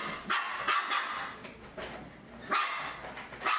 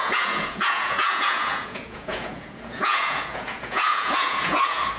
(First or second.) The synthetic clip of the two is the second